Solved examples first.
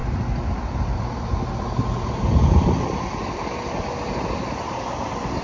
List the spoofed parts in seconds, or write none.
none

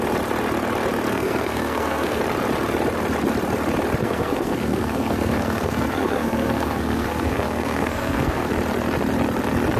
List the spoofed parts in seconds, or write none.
1.1-2.2 (codec, SNAC); 4.0-8.5

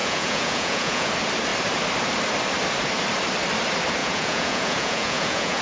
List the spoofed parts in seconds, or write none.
0.0-1.1 (vocoder, Vocos); 4.0-5.6

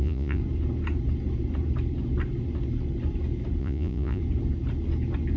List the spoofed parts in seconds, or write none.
0.0-0.4 (vocoder, Vocos); 3.6-4.2

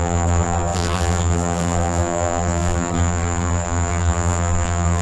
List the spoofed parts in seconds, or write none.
0.0-5.0 (vocoder, BigVGAN v2)

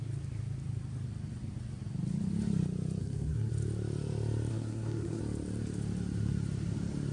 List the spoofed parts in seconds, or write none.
3.0-3.5 (codec, SNAC); 4.5-5.2

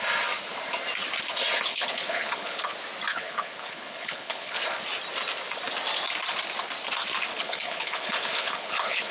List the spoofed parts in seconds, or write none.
1.7-2.7 (codec, HILCodec); 3.1-4.6; 7.3-9.1

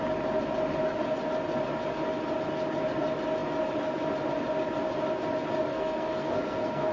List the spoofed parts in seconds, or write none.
5.7-6.9 (codec, SNAC)